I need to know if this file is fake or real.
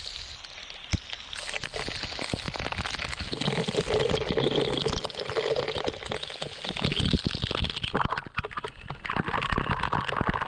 real